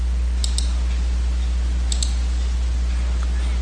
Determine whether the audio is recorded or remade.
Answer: recorded